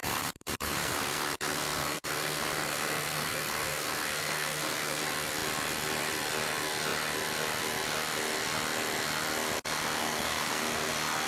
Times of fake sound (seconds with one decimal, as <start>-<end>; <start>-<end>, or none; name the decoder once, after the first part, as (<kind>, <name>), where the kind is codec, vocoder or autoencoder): 0.0-5.0 (codec, SNAC); 10.0-10.9